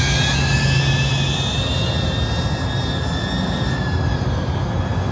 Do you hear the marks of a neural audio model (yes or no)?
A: no